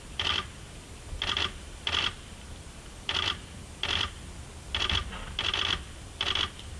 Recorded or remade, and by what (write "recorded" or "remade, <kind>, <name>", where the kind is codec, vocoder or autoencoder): remade, vocoder, BigVGAN v2